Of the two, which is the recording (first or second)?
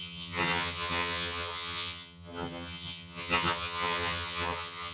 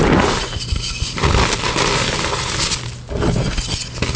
second